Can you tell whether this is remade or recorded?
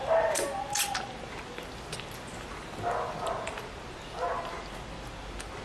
recorded